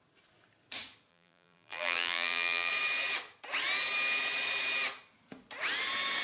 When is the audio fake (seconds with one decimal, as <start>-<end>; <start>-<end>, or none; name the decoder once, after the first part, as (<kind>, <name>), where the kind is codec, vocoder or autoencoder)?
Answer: 1.1-2.7 (vocoder, BigVGAN v2)